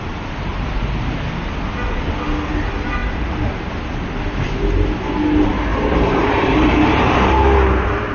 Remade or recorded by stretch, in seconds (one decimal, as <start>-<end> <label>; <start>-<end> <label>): 0.0-0.5 recorded; 0.5-2.1 remade; 2.1-3.0 recorded; 3.0-3.7 remade; 3.7-5.7 recorded; 5.7-7.3 remade; 7.3-8.1 recorded